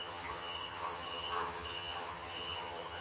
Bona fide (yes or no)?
no